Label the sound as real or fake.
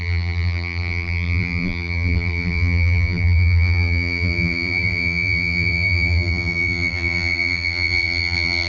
fake